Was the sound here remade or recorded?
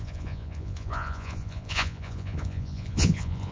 remade